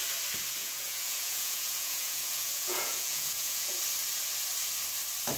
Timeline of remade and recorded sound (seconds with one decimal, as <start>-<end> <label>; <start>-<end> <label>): 0.0-0.6 recorded; 0.6-3.8 remade; 3.8-5.4 recorded